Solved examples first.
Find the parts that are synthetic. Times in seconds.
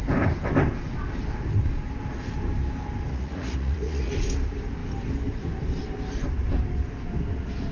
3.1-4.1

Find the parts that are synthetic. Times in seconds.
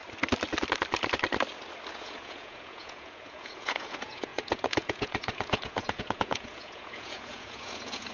1.9-8.1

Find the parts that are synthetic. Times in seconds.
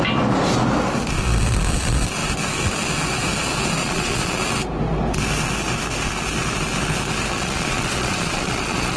3.8-4.4; 7.3-9.0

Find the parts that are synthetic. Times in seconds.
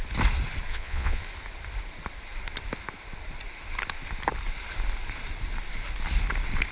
0.7-1.2